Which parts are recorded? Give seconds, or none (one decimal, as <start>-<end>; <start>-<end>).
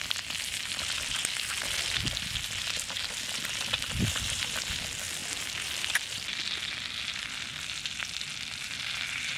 0.0-9.4